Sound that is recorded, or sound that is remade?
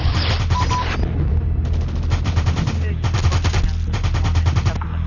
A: recorded